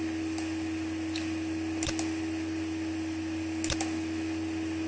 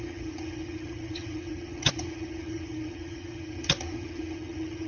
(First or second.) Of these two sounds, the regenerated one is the second